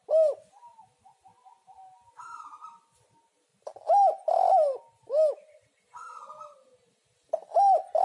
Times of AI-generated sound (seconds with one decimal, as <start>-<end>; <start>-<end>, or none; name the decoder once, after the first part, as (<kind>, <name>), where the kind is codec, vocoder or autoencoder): none